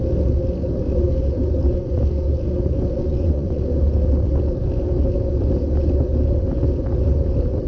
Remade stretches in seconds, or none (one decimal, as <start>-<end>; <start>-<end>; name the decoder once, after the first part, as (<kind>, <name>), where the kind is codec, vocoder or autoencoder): 3.0-3.6 (vocoder, Vocos)